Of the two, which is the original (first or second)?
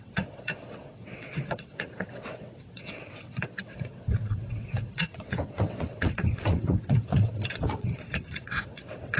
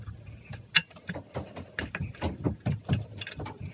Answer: second